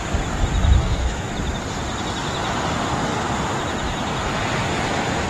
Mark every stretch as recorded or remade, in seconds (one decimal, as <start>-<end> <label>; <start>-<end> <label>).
0.0-0.8 recorded; 0.8-1.3 remade; 1.3-5.3 recorded

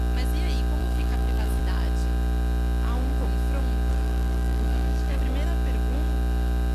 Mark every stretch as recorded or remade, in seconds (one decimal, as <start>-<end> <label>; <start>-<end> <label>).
0.0-0.8 recorded; 0.8-1.6 remade; 1.6-3.9 recorded; 3.9-5.2 remade; 5.2-6.7 recorded

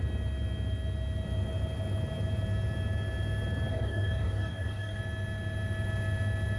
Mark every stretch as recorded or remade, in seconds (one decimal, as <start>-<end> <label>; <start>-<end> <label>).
0.0-3.7 recorded; 3.7-5.0 remade; 5.0-6.6 recorded

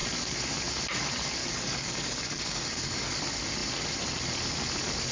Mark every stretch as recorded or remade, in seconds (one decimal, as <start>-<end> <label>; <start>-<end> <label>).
0.0-1.4 recorded; 1.4-3.2 remade; 3.2-5.1 recorded